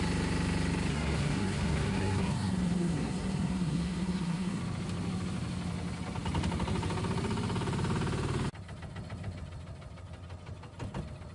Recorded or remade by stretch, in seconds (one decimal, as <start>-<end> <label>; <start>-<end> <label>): 0.0-0.9 recorded; 0.9-4.6 remade; 4.6-11.3 recorded